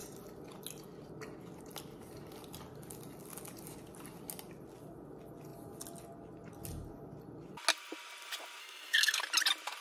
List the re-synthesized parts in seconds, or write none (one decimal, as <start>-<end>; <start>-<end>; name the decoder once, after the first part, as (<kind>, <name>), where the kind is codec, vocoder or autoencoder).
8.6-9.2 (codec, SNAC)